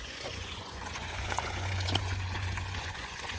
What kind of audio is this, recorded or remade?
remade